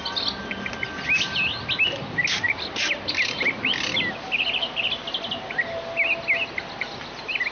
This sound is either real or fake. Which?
real